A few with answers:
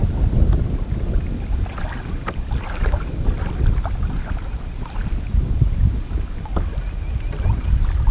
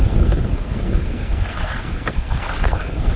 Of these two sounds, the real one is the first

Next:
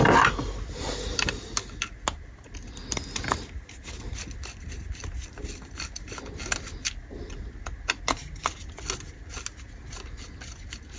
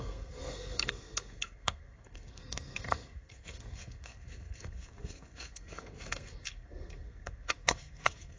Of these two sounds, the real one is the first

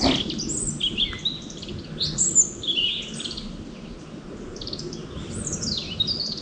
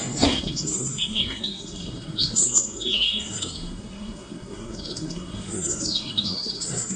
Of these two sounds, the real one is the first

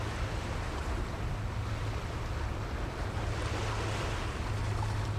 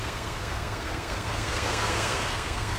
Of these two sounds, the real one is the first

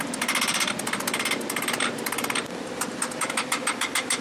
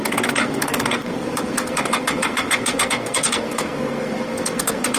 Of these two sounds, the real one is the first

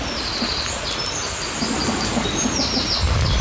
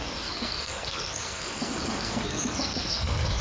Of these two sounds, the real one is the first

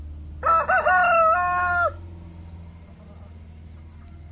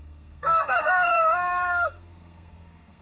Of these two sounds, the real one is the first